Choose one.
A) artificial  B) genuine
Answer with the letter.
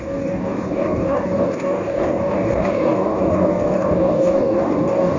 A